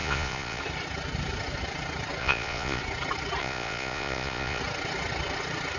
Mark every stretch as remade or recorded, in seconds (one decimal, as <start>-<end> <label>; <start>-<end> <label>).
0.0-0.6 remade; 0.6-2.2 recorded; 2.2-2.8 remade; 2.8-3.4 recorded; 3.4-4.6 remade; 4.6-5.8 recorded